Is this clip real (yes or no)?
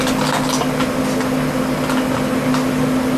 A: yes